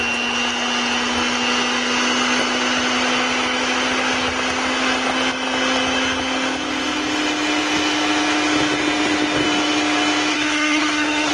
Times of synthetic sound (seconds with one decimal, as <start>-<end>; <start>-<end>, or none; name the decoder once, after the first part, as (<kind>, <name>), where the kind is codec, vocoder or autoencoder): 10.3-11.3 (codec, SNAC)

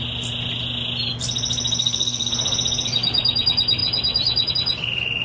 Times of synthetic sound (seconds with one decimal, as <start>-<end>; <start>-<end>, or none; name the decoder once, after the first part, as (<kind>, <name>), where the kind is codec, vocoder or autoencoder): 1.8-2.3 (codec, SNAC)

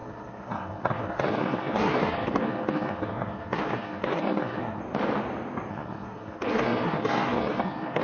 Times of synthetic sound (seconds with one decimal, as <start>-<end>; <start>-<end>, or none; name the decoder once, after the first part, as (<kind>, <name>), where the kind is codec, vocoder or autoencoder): 0.0-4.8 (codec, SNAC); 5.7-8.0

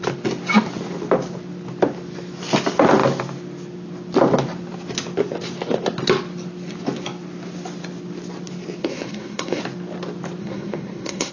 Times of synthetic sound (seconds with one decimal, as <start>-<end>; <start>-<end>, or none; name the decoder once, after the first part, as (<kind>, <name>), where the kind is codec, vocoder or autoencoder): 8.8-9.6 (codec, SNAC); 10.4-11.3